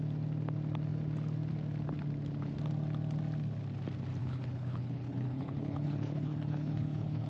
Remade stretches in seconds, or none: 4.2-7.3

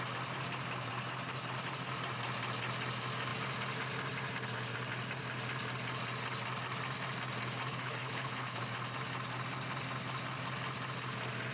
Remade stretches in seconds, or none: 7.7-8.6

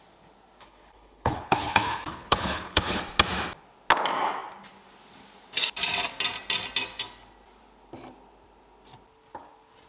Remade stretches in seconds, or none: 0.6-3.0